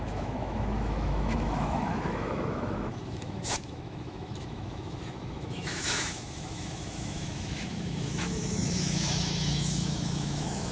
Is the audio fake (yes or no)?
yes